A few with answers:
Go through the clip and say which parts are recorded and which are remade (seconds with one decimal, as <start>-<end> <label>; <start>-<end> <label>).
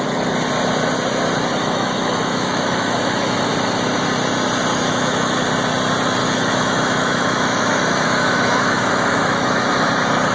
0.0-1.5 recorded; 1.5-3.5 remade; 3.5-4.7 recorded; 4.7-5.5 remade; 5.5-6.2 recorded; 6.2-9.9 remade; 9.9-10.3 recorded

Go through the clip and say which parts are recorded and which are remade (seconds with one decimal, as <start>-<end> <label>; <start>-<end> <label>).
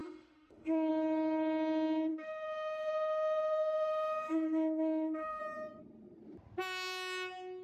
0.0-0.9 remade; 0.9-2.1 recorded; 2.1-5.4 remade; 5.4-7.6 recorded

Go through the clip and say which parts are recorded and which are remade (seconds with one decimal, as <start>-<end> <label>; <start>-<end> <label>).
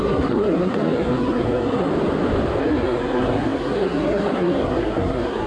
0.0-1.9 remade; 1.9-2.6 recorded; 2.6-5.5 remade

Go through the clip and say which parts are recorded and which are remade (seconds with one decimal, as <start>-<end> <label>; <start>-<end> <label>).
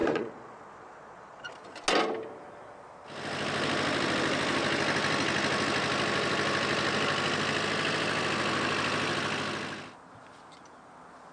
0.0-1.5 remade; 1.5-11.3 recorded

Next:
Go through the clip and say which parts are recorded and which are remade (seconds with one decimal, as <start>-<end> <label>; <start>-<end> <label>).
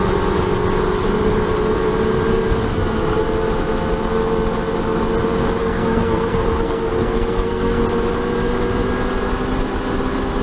0.0-5.6 recorded; 5.6-7.8 remade; 7.8-10.4 recorded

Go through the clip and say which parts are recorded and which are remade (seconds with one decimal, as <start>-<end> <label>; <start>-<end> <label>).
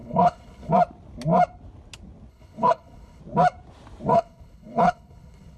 0.0-0.7 remade; 0.7-2.3 recorded; 2.3-3.2 remade; 3.2-4.1 recorded; 4.1-5.6 remade